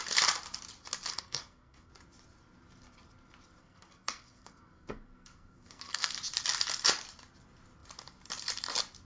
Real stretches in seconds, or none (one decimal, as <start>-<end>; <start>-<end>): 0.0-1.1; 1.9-3.6; 6.1-9.0